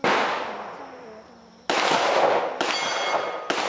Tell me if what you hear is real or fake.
real